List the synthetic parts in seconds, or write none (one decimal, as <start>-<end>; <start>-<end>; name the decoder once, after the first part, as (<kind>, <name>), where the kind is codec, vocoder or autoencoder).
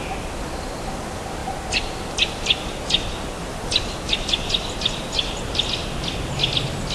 none